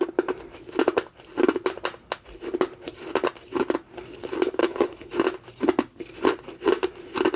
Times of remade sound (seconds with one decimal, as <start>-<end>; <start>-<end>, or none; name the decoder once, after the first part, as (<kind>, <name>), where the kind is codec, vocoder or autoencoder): 4.6-5.1 (codec, HILCodec)